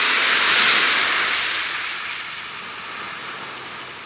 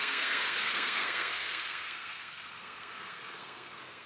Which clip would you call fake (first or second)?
second